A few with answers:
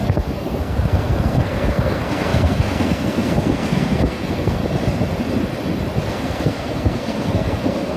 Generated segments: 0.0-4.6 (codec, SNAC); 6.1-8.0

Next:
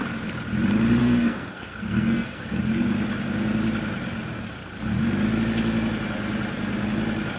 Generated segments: 1.0-2.6 (codec, SNAC)

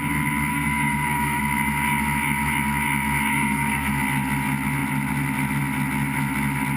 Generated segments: 0.5-1.4 (codec, SNAC); 3.3-3.9

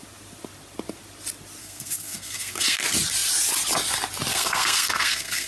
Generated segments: 1.6-2.8 (codec, SNAC); 4.3-5.5

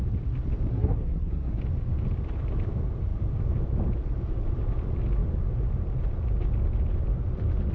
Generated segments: 0.7-1.6 (codec, SNAC)

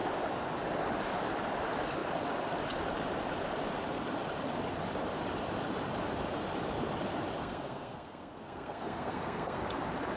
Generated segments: 7.4-9.6 (codec, SNAC)

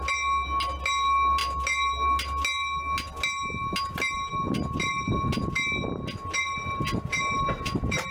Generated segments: none

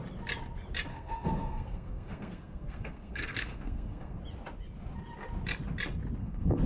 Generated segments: 0.9-4.2 (codec, SNAC); 6.2-6.7